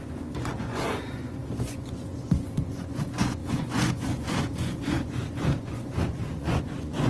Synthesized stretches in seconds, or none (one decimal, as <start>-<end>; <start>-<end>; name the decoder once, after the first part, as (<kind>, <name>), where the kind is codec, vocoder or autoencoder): 0.0-7.1 (vocoder, Vocos)